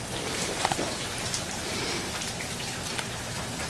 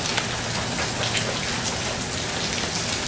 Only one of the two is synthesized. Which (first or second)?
first